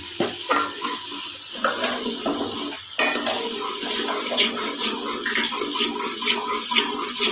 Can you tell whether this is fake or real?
real